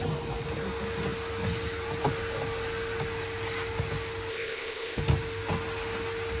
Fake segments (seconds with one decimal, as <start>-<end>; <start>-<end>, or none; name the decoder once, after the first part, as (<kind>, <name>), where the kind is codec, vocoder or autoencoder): 4.3-5.0 (codec, ZipCodec)